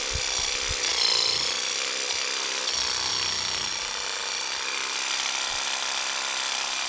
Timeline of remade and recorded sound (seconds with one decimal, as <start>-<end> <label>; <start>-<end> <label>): 0.0-6.9 recorded